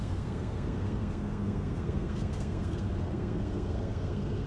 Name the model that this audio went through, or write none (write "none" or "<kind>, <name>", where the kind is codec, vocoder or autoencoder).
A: codec, SNAC